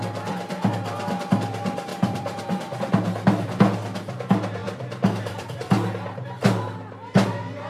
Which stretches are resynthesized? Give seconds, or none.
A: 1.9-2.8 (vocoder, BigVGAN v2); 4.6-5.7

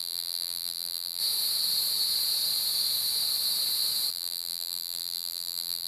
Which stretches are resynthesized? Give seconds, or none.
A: 0.0-1.2 (vocoder, BigVGAN v2); 4.1-5.9

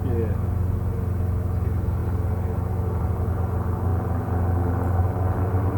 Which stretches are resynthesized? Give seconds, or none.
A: none